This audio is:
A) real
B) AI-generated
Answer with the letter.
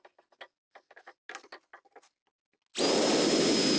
A